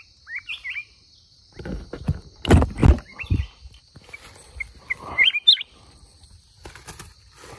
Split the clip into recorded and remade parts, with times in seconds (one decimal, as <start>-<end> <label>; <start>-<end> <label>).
0.0-7.6 recorded